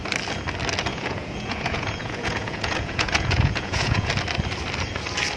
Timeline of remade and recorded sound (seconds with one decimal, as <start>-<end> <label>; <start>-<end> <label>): 0.0-0.9 recorded; 0.9-4.1 remade; 4.1-5.4 recorded